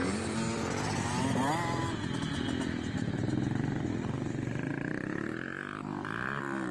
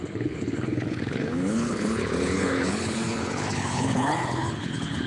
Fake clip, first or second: second